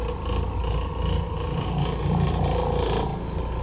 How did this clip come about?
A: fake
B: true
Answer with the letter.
B